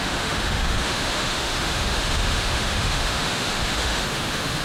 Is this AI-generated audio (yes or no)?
yes